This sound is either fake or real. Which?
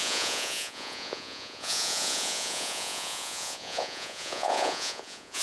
fake